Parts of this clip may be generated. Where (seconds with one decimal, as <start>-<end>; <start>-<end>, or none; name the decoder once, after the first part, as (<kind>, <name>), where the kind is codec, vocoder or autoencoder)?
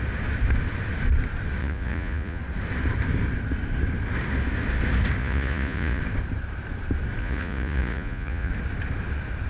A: 1.6-2.4 (vocoder, Vocos); 5.2-6.0; 7.2-8.5